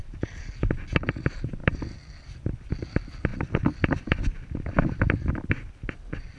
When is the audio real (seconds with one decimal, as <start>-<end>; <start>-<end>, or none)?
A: 0.0-1.6; 2.5-3.3; 5.3-6.4